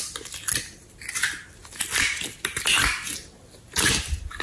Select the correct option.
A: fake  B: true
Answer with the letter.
B